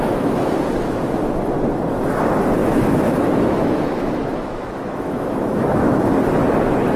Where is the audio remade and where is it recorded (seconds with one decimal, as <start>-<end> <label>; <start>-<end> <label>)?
0.0-2.6 recorded; 2.6-6.1 remade; 6.1-7.0 recorded